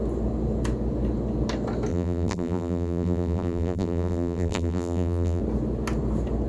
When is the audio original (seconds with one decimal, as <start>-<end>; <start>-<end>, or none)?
0.0-1.9; 5.4-6.5